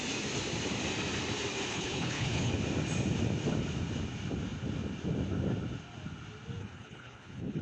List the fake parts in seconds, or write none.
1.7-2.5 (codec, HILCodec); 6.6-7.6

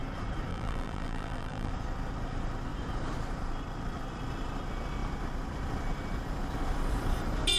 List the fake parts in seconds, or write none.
0.5-1.7 (vocoder, BigVGAN v2)